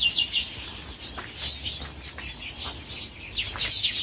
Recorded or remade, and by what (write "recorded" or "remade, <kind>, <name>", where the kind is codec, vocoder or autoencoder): recorded